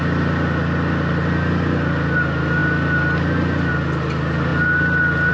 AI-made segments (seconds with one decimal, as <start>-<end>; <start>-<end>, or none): none